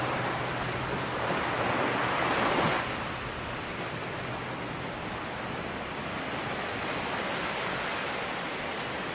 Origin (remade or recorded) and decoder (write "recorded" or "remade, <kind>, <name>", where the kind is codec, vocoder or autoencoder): recorded